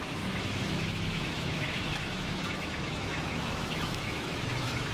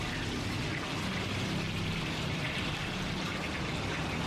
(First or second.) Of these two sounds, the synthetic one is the first